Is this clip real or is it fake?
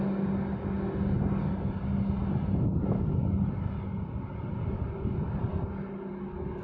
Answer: real